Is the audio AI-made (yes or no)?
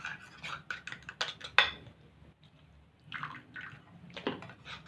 no